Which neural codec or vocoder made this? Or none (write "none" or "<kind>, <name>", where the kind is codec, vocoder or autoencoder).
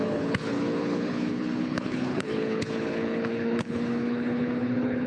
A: codec, HILCodec